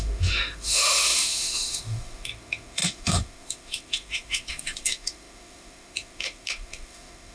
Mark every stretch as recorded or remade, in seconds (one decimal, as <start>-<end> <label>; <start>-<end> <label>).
0.0-7.3 remade